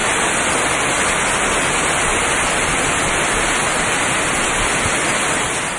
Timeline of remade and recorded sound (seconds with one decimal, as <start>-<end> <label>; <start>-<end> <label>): 0.0-5.8 recorded